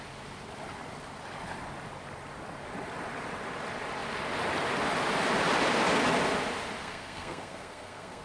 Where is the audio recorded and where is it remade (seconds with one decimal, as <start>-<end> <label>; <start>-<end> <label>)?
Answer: 0.0-6.8 recorded; 6.8-8.2 remade